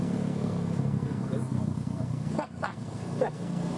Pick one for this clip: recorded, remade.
remade